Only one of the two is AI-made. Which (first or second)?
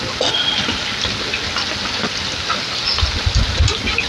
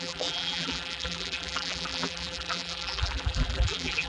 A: second